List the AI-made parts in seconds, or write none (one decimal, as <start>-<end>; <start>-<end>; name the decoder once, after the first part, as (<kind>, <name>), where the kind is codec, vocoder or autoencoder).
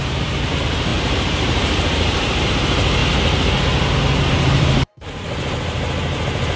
0.0-3.0 (vocoder, BigVGAN v2); 4.3-4.9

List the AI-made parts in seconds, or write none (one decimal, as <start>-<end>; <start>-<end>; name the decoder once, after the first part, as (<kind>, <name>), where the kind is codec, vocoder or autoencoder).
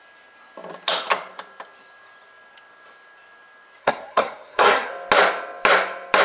3.8-4.9 (codec, SNAC)